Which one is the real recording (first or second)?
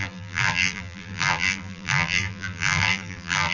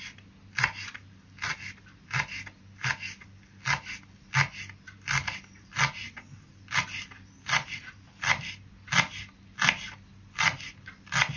second